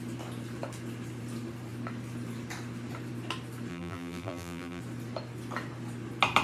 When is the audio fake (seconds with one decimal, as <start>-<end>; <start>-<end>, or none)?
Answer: 3.7-4.8